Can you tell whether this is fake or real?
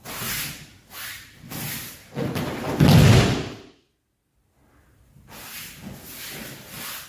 real